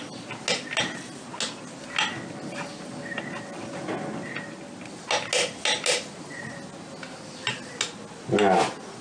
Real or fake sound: real